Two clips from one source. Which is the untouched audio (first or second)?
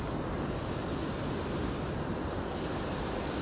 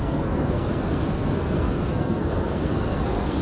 first